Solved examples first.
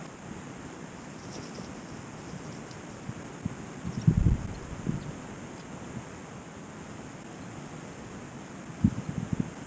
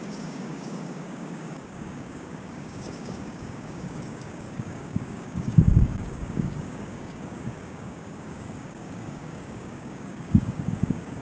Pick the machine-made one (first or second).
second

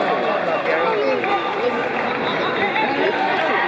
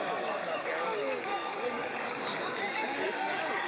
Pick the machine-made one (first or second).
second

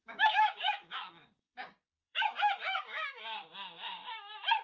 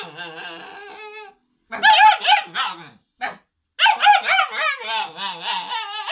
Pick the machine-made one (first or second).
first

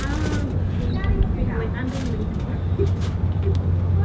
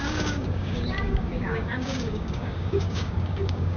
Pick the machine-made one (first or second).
second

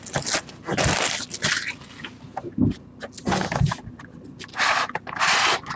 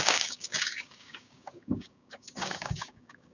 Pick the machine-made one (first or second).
second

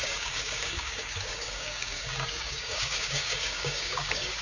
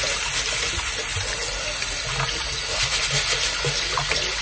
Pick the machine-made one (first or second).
first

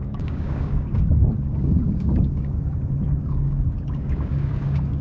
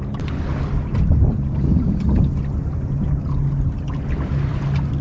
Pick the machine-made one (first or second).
first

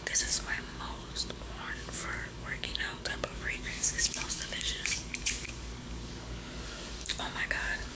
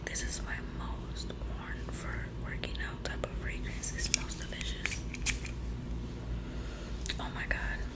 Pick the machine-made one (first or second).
first